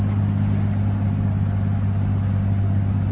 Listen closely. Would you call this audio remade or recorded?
recorded